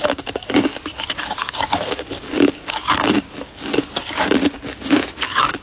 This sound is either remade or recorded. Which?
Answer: remade